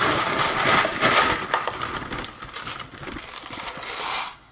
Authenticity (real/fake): real